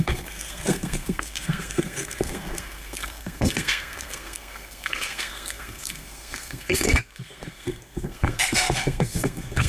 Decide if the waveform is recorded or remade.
remade